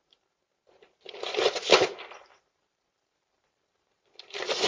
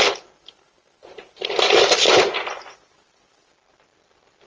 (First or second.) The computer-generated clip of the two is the first